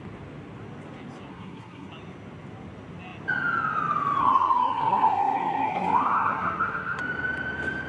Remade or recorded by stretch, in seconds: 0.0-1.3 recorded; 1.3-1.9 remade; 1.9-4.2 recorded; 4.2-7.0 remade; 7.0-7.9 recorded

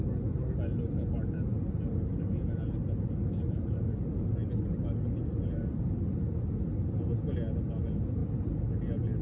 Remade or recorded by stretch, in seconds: 0.0-9.2 recorded

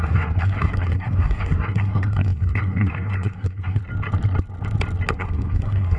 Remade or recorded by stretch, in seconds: 0.0-3.8 remade; 3.8-5.1 recorded; 5.1-6.0 remade

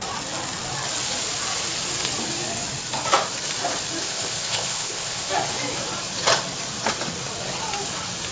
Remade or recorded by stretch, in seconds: 0.0-4.0 recorded; 4.0-5.3 remade; 5.3-8.3 recorded

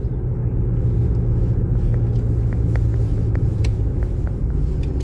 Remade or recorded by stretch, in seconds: 0.0-0.4 remade; 0.4-3.0 recorded; 3.0-3.7 remade; 3.7-4.3 recorded; 4.3-5.0 remade